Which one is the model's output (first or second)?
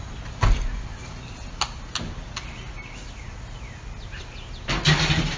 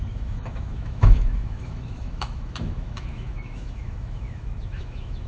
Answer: second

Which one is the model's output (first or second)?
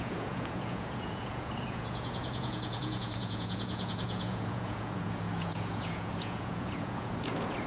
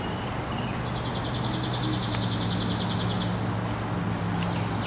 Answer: first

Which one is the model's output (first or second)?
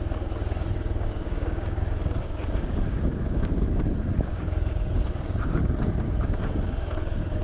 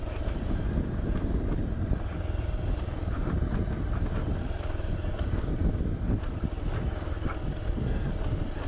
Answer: first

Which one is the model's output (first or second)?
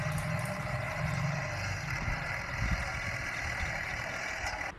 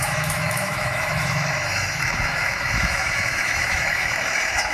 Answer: second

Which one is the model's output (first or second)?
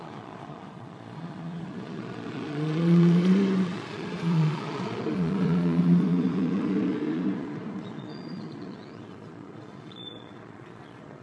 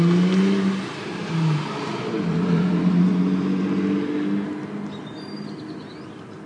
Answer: first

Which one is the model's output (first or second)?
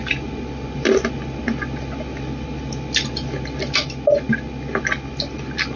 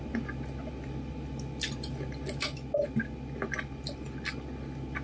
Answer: second